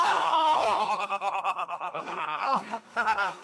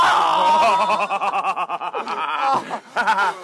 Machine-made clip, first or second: first